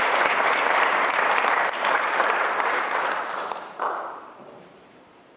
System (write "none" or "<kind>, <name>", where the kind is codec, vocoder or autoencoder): vocoder, BigVGAN v2